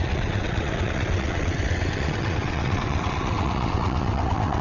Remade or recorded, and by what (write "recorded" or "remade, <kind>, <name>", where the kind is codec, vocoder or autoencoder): remade, vocoder, WaveNeXt